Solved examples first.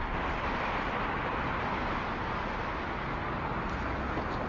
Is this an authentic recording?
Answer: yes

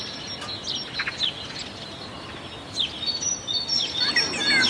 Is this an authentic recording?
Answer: yes